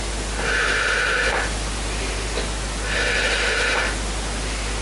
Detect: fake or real real